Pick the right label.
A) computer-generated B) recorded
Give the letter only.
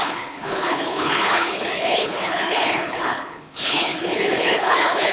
A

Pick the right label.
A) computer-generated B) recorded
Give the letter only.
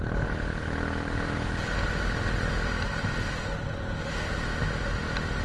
B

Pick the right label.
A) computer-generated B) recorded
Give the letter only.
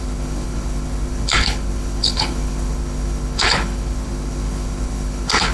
A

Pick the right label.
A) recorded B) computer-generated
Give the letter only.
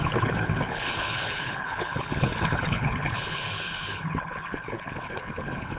B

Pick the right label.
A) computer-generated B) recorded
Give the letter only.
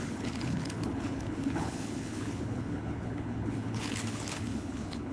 A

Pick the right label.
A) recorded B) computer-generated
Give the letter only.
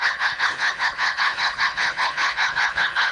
B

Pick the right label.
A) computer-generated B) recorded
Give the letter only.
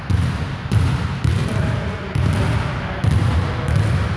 B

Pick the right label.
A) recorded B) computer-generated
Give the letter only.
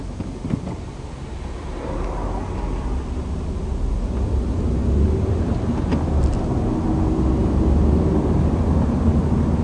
A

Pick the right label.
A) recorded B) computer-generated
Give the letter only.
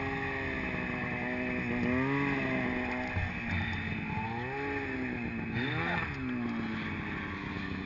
A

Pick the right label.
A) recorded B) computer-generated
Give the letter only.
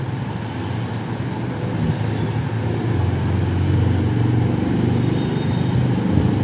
A